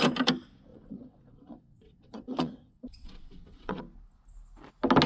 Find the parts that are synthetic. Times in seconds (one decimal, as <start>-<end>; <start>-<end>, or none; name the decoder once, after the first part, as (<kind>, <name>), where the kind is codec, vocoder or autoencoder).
0.7-3.8 (vocoder, WaveNeXt)